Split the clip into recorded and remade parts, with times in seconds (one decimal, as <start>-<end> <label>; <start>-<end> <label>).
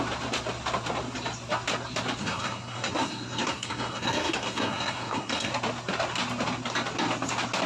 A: 0.0-2.2 recorded; 2.2-5.5 remade; 5.5-7.7 recorded